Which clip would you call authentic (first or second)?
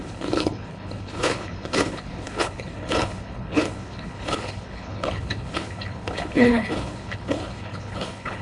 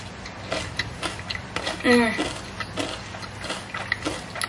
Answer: second